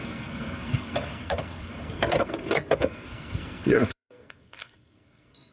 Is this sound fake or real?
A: fake